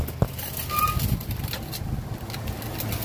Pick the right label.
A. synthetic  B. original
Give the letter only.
B